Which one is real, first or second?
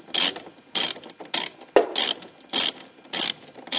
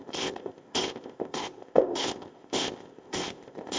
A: first